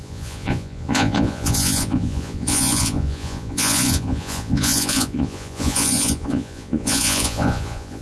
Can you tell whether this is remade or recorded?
remade